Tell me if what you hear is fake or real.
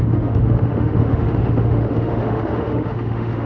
fake